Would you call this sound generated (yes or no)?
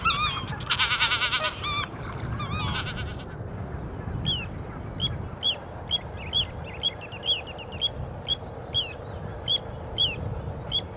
no